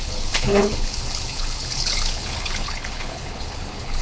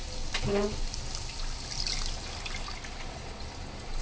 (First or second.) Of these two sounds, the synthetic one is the first